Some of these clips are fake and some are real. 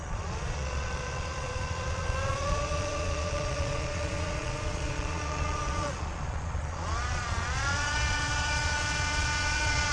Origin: fake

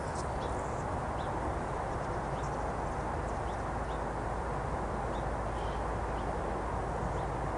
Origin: real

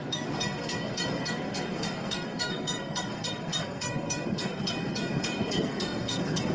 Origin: fake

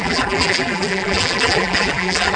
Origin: fake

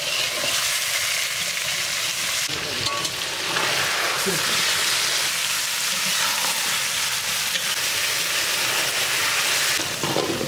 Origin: real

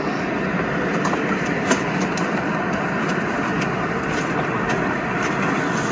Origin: real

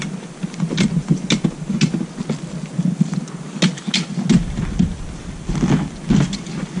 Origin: real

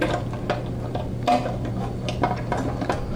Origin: real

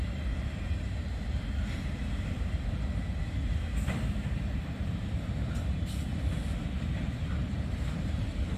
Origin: fake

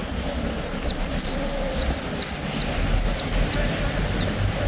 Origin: real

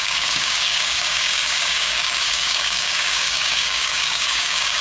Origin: fake